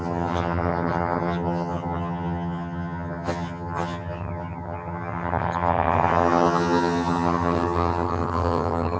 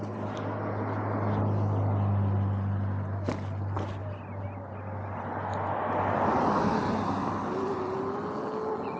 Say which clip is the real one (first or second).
second